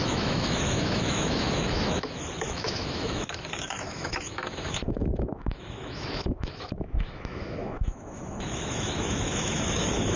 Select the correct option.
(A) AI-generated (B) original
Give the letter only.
A